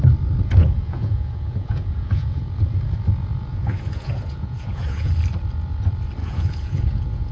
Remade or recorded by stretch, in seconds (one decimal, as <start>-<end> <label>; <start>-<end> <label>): 0.0-0.6 recorded; 0.6-2.4 remade; 2.4-3.5 recorded; 3.5-5.1 remade; 5.1-6.2 recorded; 6.2-7.3 remade